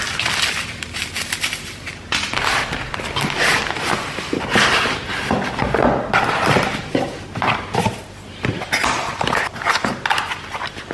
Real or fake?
real